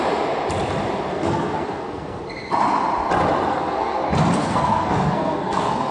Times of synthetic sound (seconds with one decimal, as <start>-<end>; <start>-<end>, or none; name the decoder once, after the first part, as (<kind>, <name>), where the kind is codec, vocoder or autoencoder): 1.1-2.2 (codec, SNAC); 3.5-4.0; 4.4-5.9